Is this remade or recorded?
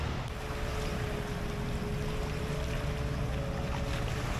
recorded